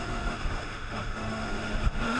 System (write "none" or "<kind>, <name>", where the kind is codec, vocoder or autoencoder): autoencoder, DAC-VAE